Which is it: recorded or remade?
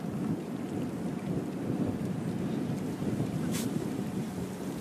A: recorded